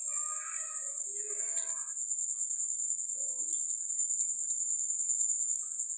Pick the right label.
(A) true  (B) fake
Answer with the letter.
B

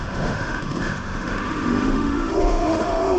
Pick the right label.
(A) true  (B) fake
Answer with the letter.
B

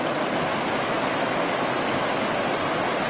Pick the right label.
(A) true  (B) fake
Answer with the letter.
A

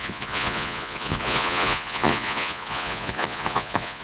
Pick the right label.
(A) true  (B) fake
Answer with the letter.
B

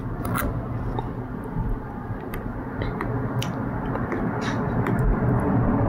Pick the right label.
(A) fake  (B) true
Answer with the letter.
B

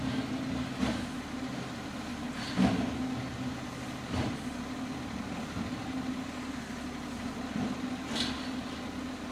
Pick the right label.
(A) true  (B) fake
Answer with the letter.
A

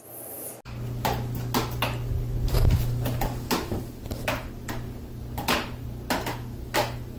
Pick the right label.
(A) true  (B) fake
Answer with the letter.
A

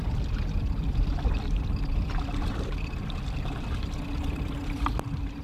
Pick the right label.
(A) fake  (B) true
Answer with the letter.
B